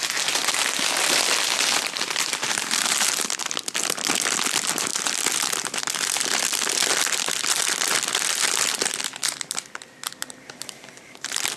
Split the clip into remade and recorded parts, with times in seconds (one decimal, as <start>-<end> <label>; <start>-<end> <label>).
0.0-11.6 recorded